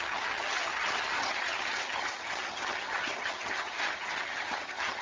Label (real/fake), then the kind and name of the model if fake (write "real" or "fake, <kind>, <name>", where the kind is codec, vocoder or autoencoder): fake, vocoder, HiFi-GAN